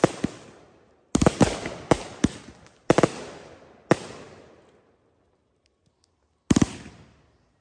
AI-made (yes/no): no